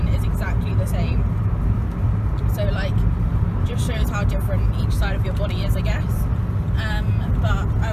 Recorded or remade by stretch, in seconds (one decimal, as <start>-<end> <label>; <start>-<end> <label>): 0.0-3.3 recorded; 3.3-4.1 remade; 4.1-7.9 recorded